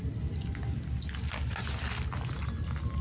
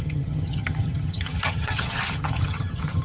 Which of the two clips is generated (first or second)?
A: second